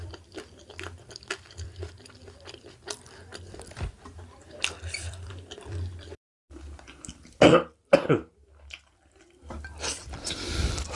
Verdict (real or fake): fake